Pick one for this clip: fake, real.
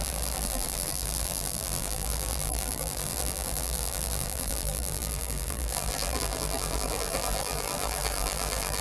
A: fake